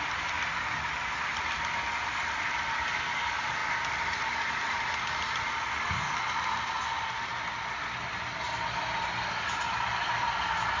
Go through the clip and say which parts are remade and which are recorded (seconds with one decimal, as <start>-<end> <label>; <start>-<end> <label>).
0.0-10.8 recorded